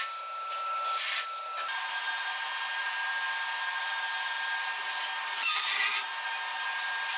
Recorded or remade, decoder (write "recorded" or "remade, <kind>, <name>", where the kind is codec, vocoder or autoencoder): recorded